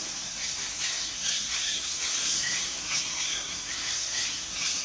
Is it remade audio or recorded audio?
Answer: remade